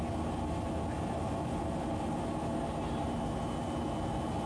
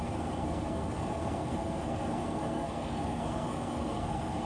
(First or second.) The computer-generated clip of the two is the second